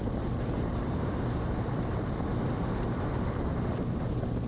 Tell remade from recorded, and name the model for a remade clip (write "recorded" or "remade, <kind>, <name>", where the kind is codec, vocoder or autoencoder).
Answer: remade, vocoder, BigVGAN v2